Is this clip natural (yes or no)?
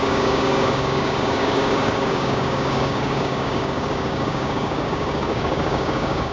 no